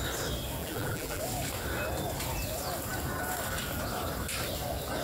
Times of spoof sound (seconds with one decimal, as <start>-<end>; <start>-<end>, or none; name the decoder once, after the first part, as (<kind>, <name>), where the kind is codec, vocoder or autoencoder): 0.6-1.2 (vocoder, BigVGAN v2)